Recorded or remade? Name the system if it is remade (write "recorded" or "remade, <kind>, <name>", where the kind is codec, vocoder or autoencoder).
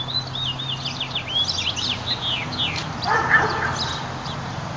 recorded